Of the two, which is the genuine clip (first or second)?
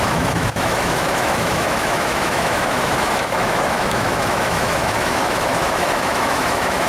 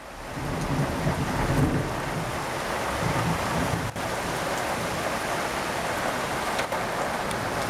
second